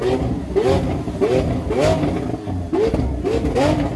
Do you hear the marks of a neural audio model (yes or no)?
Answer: no